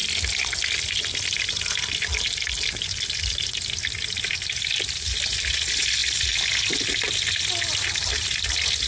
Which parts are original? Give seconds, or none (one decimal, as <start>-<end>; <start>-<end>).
0.0-8.9